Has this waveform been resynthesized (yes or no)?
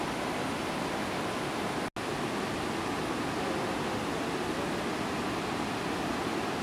no